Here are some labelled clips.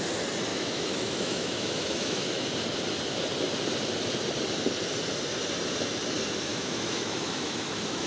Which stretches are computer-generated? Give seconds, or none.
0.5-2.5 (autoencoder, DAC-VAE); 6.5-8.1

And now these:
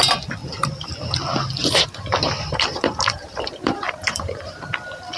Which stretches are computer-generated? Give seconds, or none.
0.4-0.9 (vocoder, BigVGAN v2); 1.6-4.7

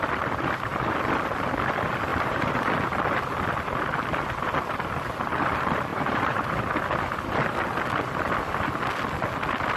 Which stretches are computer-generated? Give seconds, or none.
2.1-2.7 (vocoder, BigVGAN v2); 5.9-6.5

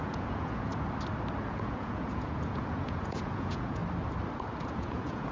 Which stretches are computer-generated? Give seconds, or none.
0.0-0.7 (vocoder, Vocos); 1.5-3.8; 4.6-5.3

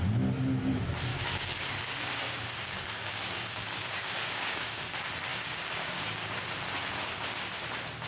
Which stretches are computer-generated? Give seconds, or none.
1.1-4.8 (codec, DAC); 5.3-6.5